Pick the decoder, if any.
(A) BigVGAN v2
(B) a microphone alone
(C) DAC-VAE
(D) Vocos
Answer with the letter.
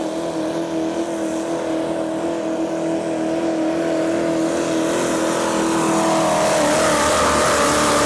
B